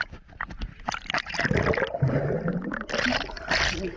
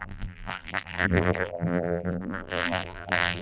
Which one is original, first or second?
first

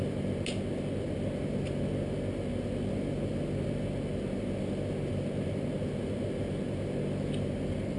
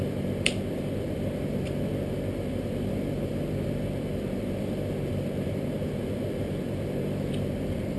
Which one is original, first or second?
first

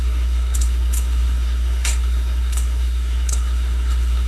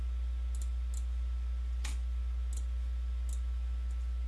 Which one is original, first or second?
second